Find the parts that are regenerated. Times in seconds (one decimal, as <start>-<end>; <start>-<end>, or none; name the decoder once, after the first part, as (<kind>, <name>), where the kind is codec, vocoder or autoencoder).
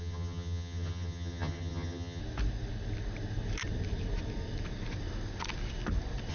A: 0.0-2.2 (vocoder, HiFi-GAN)